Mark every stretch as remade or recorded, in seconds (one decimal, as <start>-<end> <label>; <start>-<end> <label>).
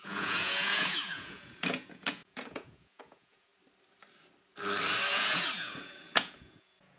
0.0-3.5 remade; 3.5-5.1 recorded; 5.1-7.0 remade